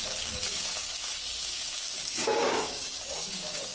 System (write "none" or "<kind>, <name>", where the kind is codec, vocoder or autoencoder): codec, DAC